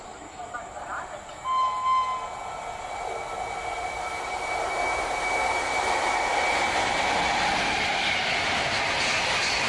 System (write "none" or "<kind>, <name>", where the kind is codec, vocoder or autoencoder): none